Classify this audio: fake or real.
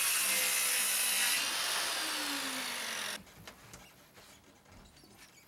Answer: real